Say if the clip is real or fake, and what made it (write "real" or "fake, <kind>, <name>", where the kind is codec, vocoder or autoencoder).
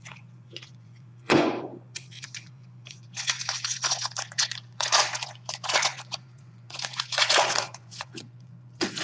fake, vocoder, Vocos